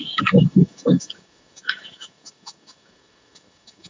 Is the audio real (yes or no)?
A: no